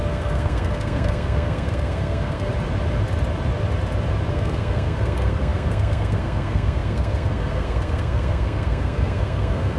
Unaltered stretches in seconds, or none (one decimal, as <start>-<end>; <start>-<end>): 2.5-4.3